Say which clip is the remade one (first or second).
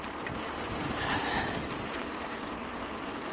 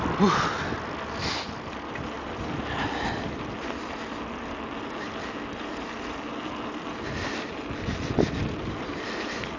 first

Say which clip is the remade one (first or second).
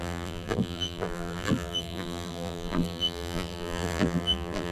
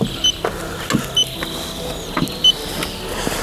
first